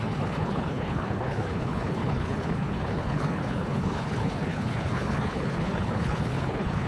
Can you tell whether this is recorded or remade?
remade